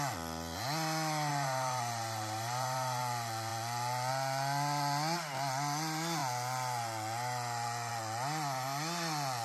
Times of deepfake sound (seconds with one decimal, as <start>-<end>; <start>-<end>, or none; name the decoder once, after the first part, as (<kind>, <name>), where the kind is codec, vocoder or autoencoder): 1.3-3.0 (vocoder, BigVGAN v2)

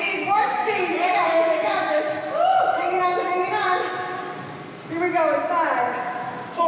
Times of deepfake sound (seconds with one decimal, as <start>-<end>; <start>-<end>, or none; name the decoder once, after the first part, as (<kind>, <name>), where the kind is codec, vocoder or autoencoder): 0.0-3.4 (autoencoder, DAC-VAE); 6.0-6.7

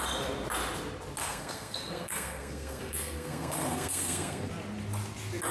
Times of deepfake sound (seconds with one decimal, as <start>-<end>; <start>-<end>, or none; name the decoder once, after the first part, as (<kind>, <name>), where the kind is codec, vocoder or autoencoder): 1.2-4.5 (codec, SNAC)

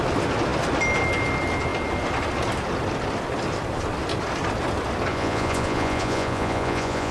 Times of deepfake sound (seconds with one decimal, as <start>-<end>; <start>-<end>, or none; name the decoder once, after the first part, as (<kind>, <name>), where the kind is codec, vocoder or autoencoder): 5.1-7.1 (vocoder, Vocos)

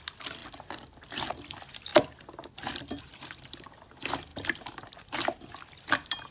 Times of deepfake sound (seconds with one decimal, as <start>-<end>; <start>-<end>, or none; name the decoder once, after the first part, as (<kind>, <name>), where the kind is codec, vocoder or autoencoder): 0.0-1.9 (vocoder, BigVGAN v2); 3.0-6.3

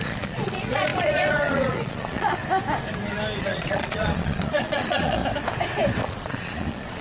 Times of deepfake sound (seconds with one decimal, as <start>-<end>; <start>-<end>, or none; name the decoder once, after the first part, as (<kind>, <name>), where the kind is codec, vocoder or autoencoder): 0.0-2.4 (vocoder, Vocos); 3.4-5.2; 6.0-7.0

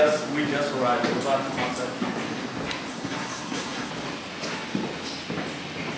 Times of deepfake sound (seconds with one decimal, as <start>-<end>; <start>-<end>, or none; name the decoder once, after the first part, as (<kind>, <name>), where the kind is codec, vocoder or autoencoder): 2.9-3.9 (codec, SNAC)

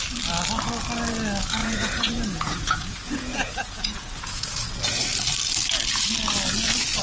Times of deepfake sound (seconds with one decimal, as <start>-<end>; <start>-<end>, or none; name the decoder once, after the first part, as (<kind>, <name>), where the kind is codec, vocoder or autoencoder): 1.6-4.7 (vocoder, Vocos)